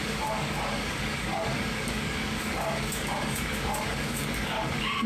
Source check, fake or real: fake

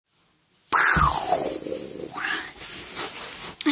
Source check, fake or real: real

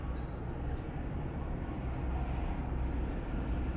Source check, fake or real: real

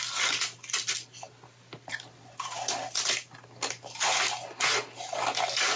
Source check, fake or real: real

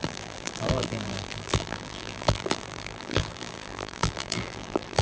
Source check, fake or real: fake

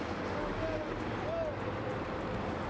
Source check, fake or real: real